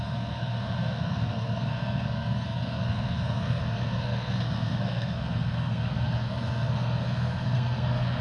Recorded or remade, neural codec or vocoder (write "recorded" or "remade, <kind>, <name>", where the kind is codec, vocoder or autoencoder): remade, codec, SNAC